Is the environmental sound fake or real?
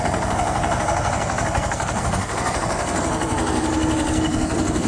fake